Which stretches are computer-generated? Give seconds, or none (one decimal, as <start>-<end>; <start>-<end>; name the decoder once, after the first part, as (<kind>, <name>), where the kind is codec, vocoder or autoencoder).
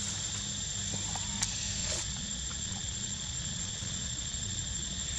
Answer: 1.8-5.2 (vocoder, Vocos)